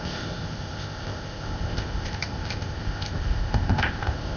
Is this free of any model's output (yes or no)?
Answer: no